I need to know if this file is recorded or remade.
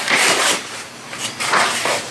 remade